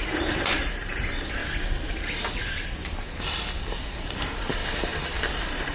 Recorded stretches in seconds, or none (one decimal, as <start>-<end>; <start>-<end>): 1.4-4.0; 4.6-5.3